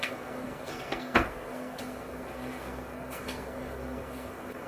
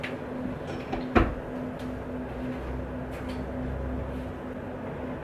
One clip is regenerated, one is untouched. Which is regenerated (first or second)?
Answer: first